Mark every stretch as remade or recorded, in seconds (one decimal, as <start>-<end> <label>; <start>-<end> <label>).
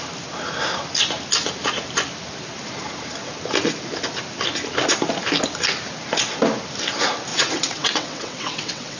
0.0-7.3 recorded; 7.3-9.0 remade